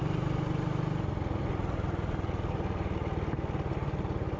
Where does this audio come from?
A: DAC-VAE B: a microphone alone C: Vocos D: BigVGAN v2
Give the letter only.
B